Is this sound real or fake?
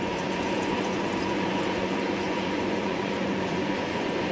fake